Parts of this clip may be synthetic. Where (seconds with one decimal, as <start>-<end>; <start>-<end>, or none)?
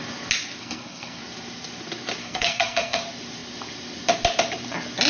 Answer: 0.6-1.2; 2.2-3.0